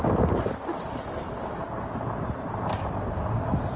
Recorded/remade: recorded